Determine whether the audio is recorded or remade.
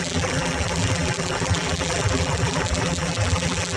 remade